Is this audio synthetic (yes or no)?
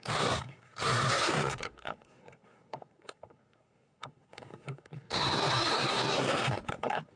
yes